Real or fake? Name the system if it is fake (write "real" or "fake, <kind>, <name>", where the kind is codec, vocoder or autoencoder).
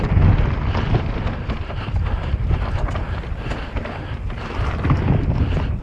real